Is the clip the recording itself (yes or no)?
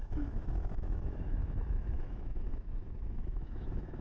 no